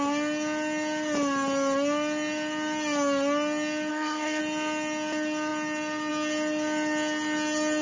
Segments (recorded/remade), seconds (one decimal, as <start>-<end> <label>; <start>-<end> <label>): 0.0-3.9 recorded; 3.9-4.4 remade; 4.4-7.8 recorded